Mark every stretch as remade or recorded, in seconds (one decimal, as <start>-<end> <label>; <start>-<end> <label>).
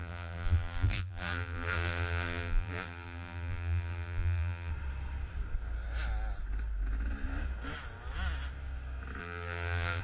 0.0-4.7 remade; 4.7-9.2 recorded; 9.2-10.0 remade